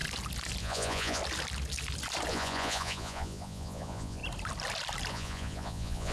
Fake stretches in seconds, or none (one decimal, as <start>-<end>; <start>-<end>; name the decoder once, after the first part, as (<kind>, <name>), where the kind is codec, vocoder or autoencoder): 0.6-1.2 (vocoder, Vocos); 2.3-4.2; 5.1-6.1

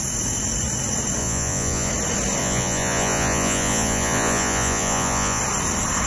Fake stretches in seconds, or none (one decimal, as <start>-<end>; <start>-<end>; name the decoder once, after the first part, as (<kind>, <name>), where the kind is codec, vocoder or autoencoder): 1.2-1.9 (vocoder, Vocos); 2.4-5.4

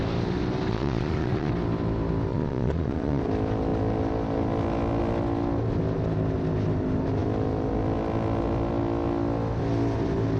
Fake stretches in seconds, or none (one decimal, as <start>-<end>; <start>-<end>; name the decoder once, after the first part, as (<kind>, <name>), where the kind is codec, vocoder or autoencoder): 0.7-1.5 (vocoder, Vocos); 2.3-3.2